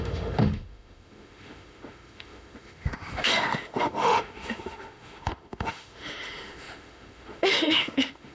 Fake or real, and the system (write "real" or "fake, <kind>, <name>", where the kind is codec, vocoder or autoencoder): fake, autoencoder, DAC-VAE